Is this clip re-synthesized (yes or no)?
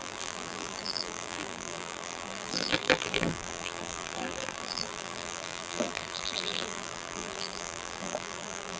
yes